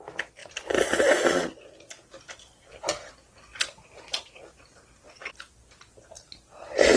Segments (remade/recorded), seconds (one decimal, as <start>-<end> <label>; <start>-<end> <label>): 0.0-7.0 recorded